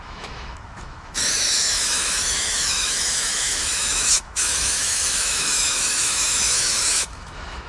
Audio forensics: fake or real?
fake